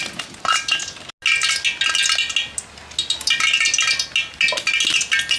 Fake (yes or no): no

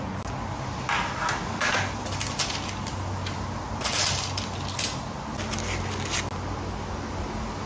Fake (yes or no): no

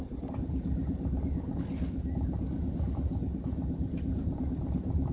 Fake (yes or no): no